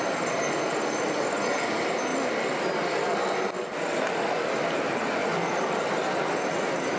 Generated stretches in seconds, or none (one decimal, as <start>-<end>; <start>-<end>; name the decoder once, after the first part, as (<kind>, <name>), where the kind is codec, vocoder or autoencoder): none